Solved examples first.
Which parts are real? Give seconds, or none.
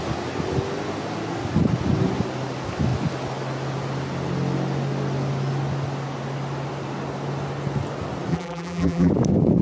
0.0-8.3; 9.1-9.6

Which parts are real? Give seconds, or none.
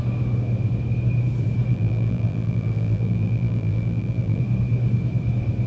0.0-1.7; 4.4-5.7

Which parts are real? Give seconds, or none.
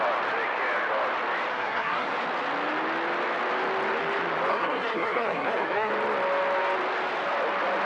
0.0-1.5; 2.1-4.5; 5.9-7.9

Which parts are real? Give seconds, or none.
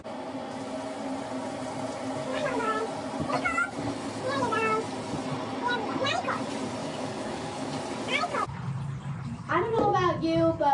0.0-2.3; 2.8-6.8; 7.7-10.7